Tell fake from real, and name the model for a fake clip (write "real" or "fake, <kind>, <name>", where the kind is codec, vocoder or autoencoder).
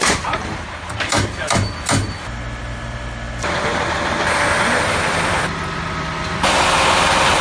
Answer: real